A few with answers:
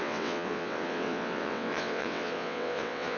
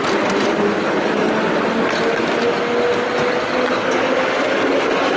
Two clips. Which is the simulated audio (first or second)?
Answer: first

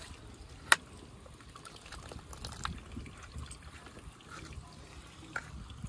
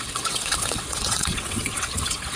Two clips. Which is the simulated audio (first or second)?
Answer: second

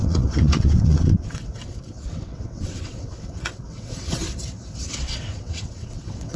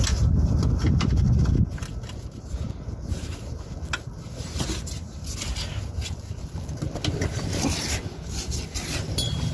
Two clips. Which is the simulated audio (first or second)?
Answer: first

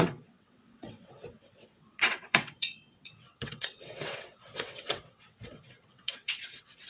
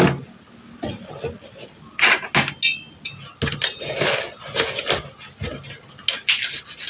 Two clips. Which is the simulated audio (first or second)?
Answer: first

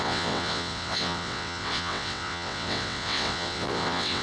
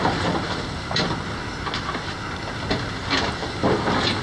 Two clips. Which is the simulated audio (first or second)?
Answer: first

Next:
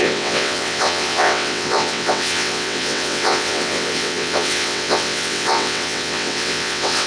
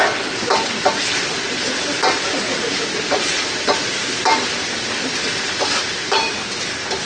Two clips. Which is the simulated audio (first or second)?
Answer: first